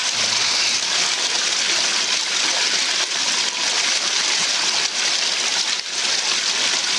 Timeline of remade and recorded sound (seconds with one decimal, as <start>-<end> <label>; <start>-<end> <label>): 0.0-7.0 recorded